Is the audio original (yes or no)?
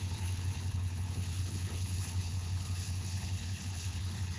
no